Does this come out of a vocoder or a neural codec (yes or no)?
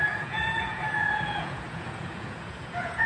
yes